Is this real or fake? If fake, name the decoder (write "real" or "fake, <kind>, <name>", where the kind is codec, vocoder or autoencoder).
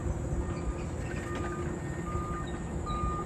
real